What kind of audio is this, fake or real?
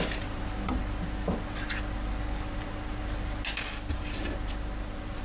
real